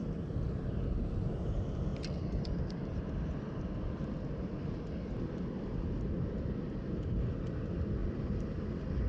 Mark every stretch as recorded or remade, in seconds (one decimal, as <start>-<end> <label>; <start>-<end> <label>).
0.0-9.1 recorded